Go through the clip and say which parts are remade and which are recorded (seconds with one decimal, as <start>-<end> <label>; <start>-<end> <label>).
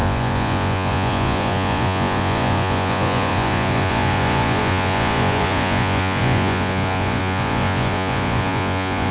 0.0-9.1 remade